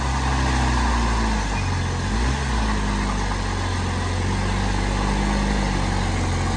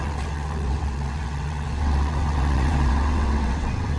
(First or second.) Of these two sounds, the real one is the first